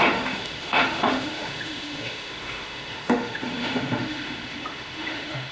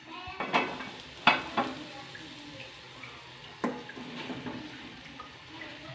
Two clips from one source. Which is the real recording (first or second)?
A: second